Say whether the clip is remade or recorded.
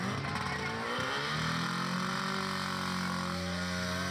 recorded